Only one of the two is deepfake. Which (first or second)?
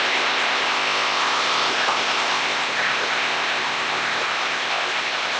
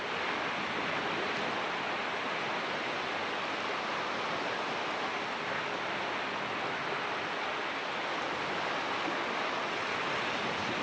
first